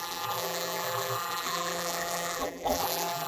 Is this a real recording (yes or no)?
no